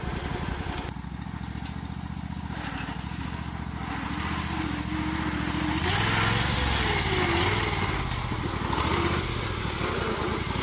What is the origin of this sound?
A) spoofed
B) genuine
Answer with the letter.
B